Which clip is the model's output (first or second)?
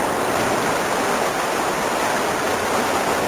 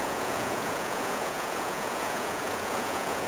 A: second